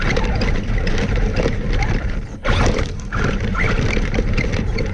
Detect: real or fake fake